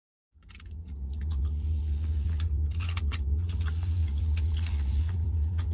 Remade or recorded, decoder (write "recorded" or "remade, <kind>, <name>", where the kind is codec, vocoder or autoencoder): remade, vocoder, Vocos